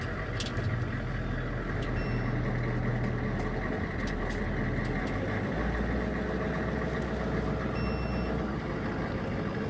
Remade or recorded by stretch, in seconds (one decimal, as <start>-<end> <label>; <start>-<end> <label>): 0.0-9.7 recorded